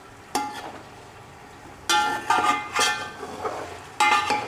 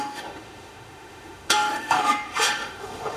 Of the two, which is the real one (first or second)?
first